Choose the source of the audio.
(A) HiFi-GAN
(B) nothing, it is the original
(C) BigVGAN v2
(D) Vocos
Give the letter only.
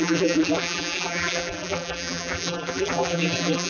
C